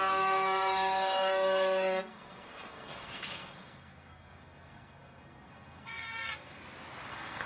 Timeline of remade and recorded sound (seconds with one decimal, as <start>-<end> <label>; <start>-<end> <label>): 0.0-6.6 remade; 6.6-7.1 recorded; 7.1-7.5 remade